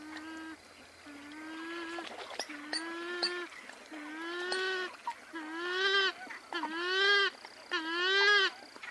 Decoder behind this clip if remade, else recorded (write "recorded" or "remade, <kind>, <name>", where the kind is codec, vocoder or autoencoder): recorded